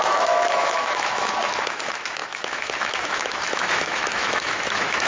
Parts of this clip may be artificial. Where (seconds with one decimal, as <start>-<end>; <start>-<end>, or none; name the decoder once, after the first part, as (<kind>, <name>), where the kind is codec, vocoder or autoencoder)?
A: 0.0-5.1 (autoencoder, DAC-VAE)